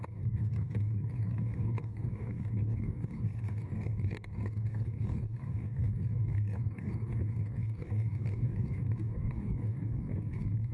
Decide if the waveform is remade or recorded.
remade